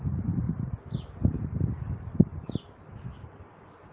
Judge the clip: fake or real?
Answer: real